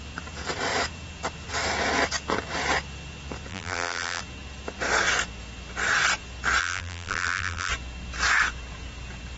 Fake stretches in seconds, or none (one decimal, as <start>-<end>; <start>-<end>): 3.5-4.2; 6.6-7.7